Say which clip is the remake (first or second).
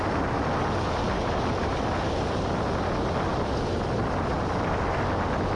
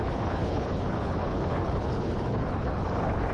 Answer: second